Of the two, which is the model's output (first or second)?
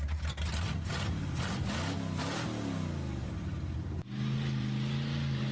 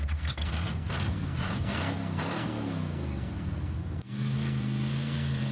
second